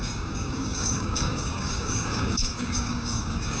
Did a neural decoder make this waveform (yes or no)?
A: yes